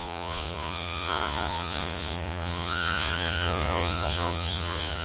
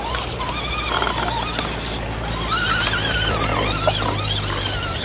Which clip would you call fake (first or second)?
first